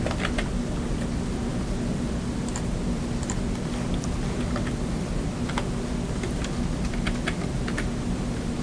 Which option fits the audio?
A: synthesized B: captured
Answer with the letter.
B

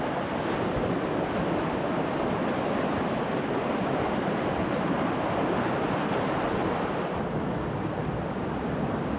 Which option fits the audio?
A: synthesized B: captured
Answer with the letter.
B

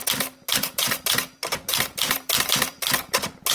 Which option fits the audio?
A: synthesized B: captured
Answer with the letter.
A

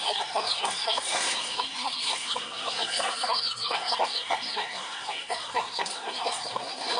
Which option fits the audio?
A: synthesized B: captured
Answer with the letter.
A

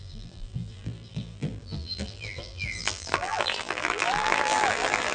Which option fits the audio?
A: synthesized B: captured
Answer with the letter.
A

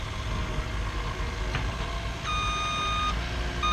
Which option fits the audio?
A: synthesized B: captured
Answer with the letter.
B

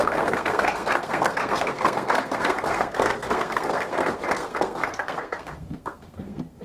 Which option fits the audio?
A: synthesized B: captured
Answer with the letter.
A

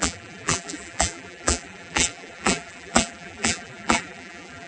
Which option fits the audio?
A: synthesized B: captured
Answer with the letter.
A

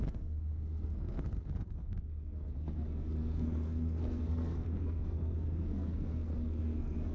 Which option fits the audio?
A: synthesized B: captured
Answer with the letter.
A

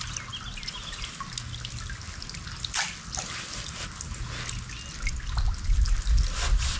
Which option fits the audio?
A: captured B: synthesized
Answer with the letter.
A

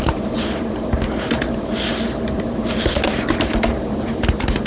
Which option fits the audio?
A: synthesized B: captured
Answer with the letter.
B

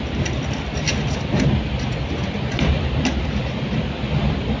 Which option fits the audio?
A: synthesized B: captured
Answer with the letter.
B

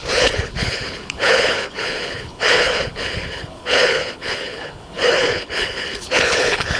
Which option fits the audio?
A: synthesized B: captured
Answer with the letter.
A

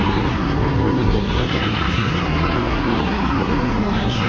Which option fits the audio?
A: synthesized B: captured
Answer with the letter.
A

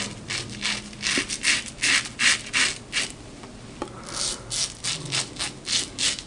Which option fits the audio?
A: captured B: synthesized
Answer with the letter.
A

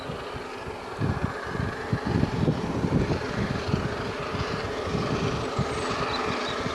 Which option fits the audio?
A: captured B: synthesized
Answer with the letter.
A